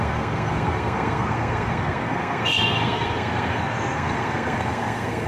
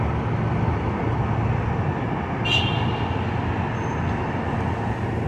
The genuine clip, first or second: second